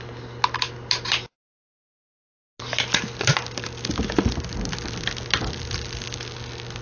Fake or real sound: real